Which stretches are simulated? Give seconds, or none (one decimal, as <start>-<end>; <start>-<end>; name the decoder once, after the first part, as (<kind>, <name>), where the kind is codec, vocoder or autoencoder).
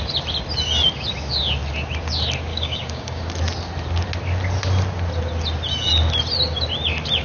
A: 2.5-3.2 (codec, DAC)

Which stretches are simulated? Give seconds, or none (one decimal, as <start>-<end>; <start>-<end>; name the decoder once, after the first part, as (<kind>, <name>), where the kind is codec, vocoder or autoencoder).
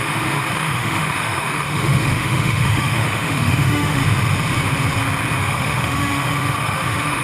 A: 0.0-4.0 (autoencoder, DAC-VAE); 5.4-7.2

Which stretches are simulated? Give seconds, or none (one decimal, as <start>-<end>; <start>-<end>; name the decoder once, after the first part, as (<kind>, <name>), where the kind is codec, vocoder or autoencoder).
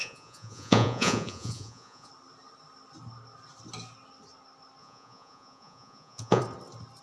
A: 0.0-2.1 (vocoder, Vocos); 4.8-6.4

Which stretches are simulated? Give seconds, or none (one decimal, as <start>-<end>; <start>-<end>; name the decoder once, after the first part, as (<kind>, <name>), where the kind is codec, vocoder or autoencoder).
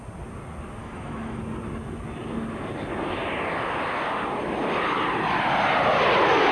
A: 0.8-1.4 (autoencoder, DAC-VAE)